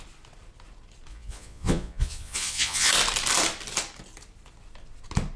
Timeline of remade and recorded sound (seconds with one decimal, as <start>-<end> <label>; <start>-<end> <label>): 0.0-1.1 recorded; 1.1-2.9 remade; 2.9-5.4 recorded